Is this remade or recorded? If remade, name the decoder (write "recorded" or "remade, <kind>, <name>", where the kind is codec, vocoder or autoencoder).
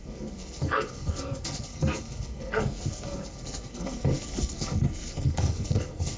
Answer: remade, codec, SNAC